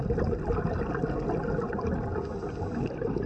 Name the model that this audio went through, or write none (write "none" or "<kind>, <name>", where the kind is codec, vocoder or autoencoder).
none